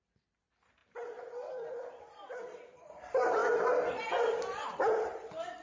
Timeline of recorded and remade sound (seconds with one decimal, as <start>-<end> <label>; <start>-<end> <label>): 0.0-3.4 remade; 3.4-3.9 recorded; 3.9-5.6 remade